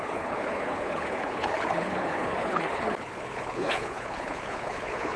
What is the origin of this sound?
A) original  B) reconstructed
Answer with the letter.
B